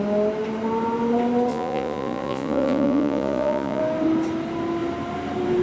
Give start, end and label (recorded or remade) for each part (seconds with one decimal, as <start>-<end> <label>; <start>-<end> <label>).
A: 0.0-1.5 recorded; 1.5-3.8 remade; 3.8-5.6 recorded